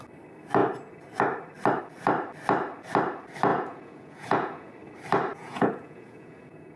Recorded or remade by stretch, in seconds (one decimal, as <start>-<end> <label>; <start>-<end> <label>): 0.0-3.5 recorded; 3.5-4.7 remade; 4.7-5.3 recorded; 5.3-6.8 remade